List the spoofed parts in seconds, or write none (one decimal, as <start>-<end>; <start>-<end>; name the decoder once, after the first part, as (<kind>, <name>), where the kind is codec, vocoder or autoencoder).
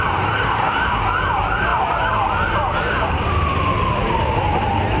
0.0-5.0 (vocoder, BigVGAN v2)